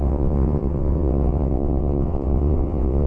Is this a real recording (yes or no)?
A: no